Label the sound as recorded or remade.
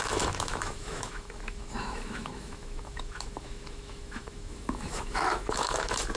remade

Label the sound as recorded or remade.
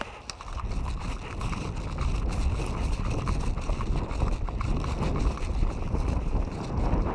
recorded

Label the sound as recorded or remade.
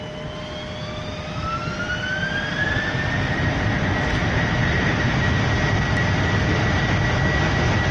recorded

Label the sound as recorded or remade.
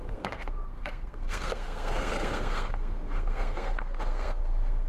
remade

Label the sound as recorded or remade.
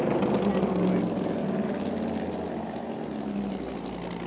recorded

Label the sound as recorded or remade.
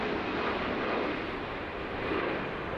recorded